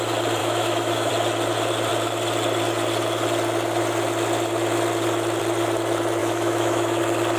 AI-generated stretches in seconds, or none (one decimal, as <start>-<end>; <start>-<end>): 0.4-1.1; 6.2-7.0